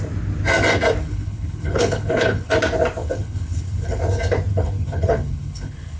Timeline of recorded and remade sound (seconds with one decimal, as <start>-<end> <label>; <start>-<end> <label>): 0.0-1.0 recorded; 1.0-2.5 remade; 2.5-3.0 recorded; 3.0-4.0 remade; 4.0-4.5 recorded; 4.5-6.0 remade